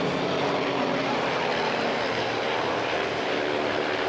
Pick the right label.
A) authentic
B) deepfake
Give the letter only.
A